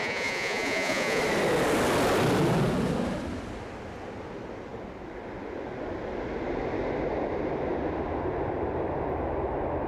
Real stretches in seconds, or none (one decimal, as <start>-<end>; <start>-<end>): 1.2-9.9